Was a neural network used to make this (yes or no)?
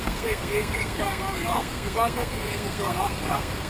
yes